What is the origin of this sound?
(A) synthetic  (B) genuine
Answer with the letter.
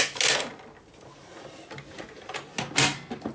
B